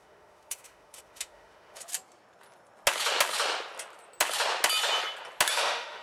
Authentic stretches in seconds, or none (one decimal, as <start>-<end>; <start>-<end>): 1.9-5.5